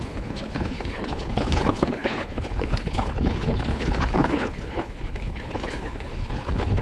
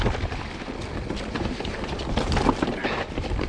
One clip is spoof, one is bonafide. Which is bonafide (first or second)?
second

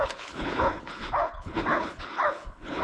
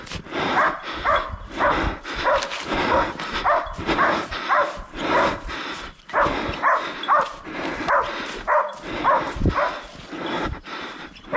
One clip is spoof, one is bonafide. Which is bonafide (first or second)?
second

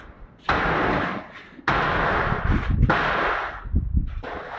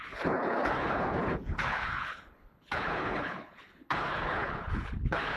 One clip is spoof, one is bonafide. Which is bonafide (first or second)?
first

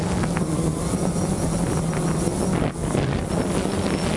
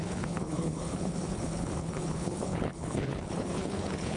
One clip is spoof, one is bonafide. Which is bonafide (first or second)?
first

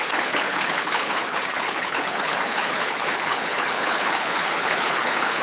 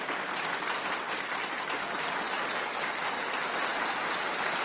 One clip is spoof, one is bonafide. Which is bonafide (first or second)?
second